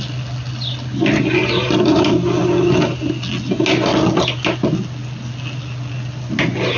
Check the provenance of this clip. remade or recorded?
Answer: recorded